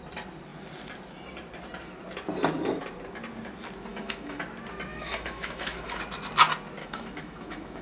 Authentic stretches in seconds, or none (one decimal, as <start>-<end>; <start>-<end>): 0.0-3.9; 4.4-4.9; 6.0-6.8